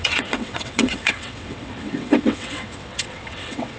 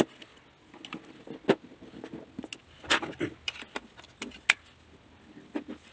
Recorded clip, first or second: second